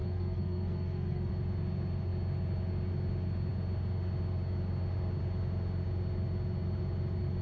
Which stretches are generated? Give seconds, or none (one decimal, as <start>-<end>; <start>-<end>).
0.0-1.3